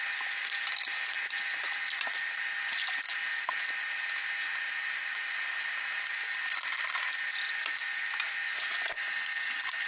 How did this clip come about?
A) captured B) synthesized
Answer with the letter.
A